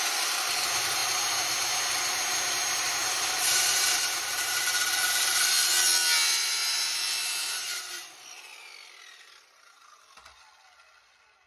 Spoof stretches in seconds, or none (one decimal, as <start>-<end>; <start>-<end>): 3.0-5.7; 6.6-7.9